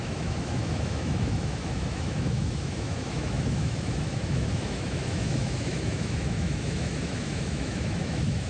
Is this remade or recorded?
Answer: remade